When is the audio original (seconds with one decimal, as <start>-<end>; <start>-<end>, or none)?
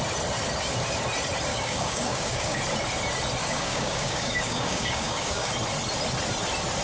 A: 0.0-1.5; 2.6-3.4; 5.5-6.8